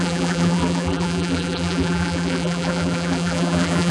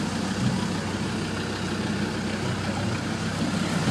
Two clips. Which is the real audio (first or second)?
second